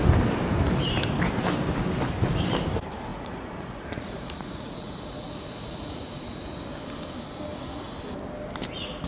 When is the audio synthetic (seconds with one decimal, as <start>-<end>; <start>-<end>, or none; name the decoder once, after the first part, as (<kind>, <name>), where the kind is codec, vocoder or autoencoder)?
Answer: 3.1-6.6 (vocoder, Vocos); 7.5-8.0